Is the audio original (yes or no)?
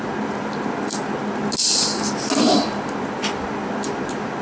yes